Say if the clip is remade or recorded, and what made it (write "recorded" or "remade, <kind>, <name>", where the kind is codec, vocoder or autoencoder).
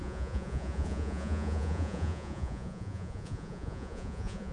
remade, vocoder, Vocos